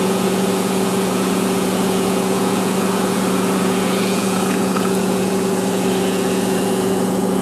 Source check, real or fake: fake